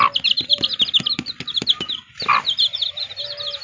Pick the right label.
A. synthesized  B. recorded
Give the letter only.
B